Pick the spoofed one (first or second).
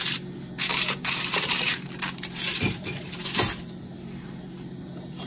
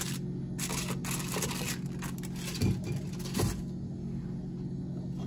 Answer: first